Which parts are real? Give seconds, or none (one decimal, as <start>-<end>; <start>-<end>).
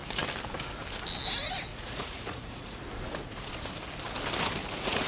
0.0-1.7; 3.5-4.6